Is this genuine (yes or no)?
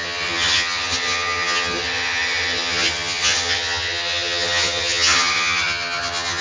no